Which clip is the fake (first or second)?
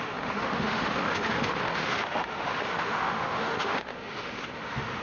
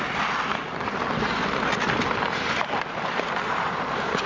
first